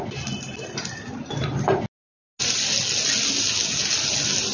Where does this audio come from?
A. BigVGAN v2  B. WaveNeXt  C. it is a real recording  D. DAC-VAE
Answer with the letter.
C